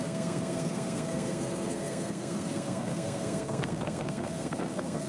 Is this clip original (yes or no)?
no